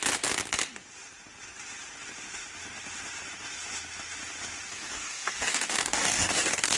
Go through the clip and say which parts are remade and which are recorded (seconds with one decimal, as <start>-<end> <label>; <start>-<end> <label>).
0.0-4.7 recorded; 4.7-6.8 remade